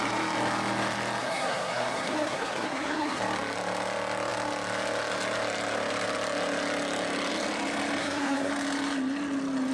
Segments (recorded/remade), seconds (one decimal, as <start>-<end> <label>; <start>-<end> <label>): 0.0-1.2 recorded; 1.2-3.2 remade; 3.2-8.0 recorded; 8.0-8.5 remade; 8.5-9.7 recorded